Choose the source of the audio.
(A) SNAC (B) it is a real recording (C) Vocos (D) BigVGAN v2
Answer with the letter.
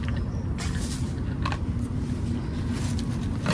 B